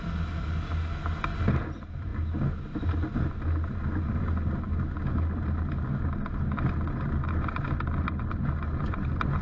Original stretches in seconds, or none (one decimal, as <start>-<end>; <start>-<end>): 0.0-9.4